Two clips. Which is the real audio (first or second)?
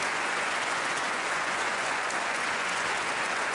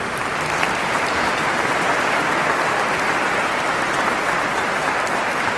second